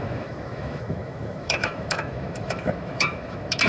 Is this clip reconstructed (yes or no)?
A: yes